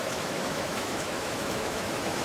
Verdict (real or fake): fake